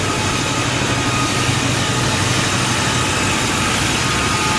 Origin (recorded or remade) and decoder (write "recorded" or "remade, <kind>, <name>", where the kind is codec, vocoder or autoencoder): recorded